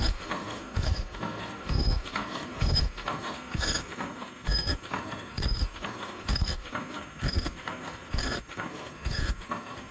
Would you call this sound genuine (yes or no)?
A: no